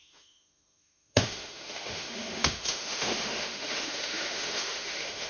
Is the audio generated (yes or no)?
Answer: yes